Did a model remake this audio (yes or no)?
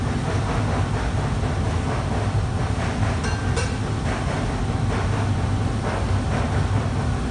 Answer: no